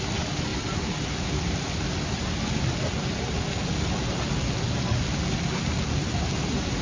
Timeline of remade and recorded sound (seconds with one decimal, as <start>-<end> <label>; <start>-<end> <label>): 0.0-6.8 recorded